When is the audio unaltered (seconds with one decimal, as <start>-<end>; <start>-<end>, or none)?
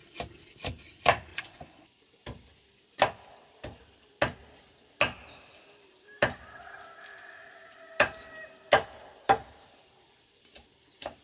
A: 0.0-1.3; 2.0-11.2